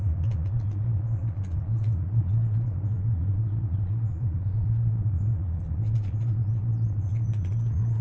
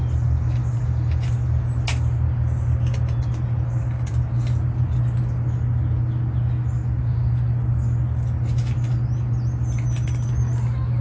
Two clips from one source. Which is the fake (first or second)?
first